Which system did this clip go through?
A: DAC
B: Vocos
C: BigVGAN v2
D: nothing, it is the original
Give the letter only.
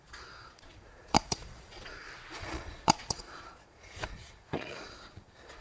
B